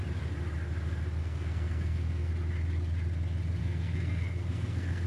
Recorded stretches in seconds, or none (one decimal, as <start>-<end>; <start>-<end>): 0.0-1.2; 2.3-3.6